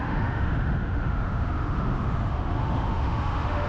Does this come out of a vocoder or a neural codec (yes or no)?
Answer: yes